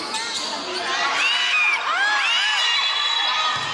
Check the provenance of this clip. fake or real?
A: real